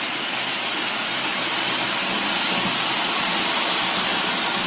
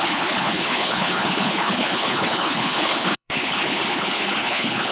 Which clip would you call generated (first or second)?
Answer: second